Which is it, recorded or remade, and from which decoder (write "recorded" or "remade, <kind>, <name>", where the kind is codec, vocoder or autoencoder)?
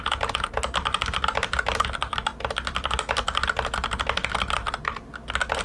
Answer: recorded